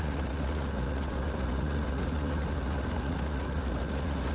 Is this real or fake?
fake